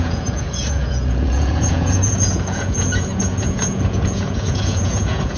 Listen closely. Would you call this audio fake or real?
fake